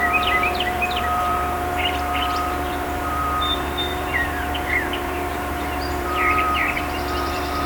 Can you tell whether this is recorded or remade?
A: remade